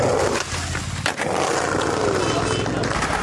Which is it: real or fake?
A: real